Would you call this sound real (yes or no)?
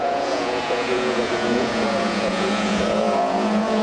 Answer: no